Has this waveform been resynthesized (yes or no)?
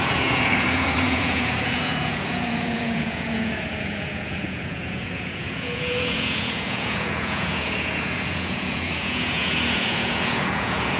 yes